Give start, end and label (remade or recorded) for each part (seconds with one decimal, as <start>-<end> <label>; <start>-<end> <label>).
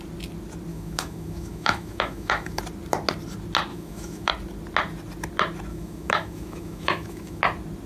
0.0-0.7 recorded; 0.7-2.6 remade; 2.6-3.7 recorded; 3.7-4.3 remade; 4.3-5.7 recorded; 5.7-7.4 remade; 7.4-7.9 recorded